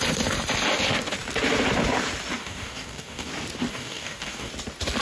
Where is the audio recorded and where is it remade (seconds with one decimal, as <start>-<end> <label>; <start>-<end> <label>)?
0.0-2.4 recorded; 2.4-3.3 remade; 3.3-3.7 recorded; 3.7-4.5 remade; 4.5-5.0 recorded